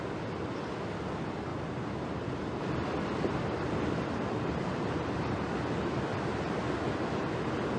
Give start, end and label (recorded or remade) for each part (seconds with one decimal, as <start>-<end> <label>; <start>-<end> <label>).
0.0-1.5 recorded; 1.5-2.2 remade; 2.2-6.1 recorded; 6.1-7.0 remade; 7.0-7.8 recorded